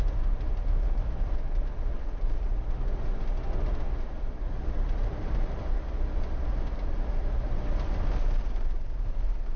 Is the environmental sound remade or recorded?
recorded